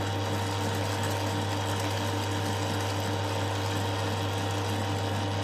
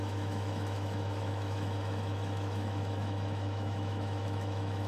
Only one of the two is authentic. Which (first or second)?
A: first